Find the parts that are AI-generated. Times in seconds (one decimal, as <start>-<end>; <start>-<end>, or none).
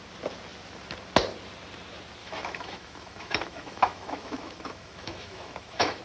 2.2-6.0